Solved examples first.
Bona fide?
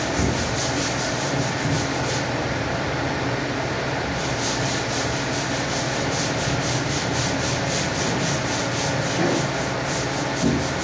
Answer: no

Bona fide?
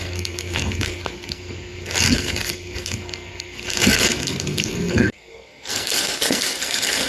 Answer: no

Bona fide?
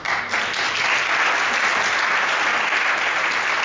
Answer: yes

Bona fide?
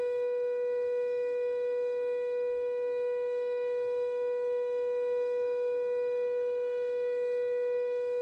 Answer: no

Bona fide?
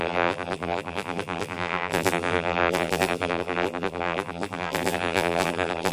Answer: no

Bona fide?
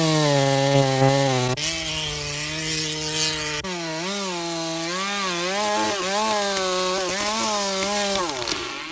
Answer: yes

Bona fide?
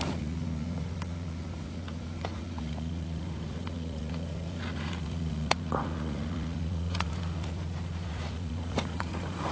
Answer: no